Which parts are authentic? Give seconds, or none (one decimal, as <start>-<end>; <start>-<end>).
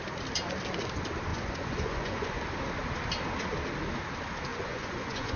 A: 0.0-1.3; 2.4-4.5